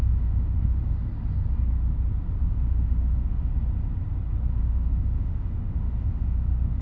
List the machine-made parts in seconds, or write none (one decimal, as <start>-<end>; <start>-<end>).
0.0-1.0; 2.4-3.5; 4.6-6.8